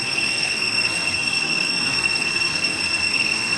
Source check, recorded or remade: remade